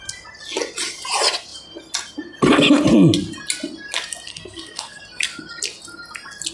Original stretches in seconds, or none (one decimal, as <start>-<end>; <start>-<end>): 0.0-4.3; 5.0-6.5